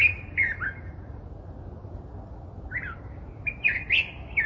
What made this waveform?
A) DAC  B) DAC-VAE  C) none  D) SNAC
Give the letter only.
C